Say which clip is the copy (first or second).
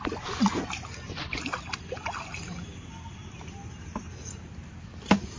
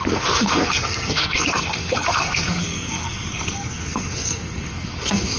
second